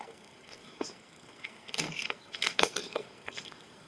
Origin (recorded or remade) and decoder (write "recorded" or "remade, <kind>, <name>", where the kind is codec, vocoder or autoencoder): remade, codec, SNAC